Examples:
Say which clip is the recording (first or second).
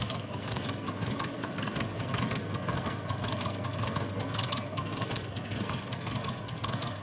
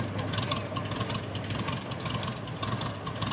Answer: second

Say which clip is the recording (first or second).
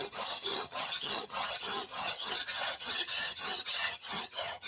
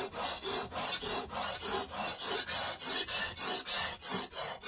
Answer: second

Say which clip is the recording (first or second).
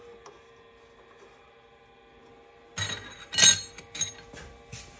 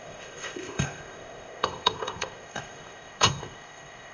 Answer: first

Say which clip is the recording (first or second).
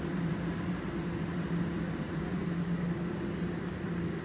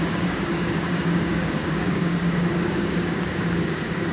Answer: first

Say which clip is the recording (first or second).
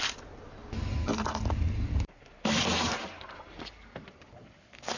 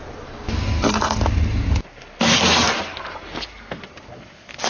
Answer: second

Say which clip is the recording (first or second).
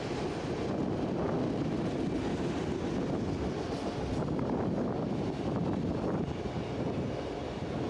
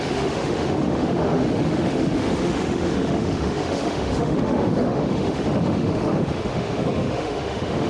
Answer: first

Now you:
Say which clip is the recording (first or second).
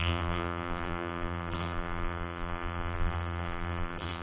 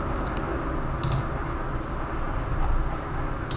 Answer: second